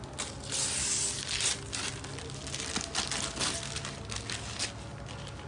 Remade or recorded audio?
recorded